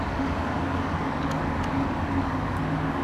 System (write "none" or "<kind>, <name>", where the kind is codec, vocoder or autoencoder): codec, DAC